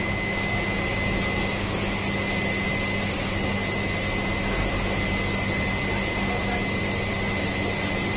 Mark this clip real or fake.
real